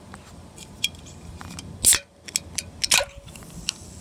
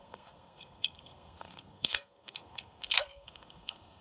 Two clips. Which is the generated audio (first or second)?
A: second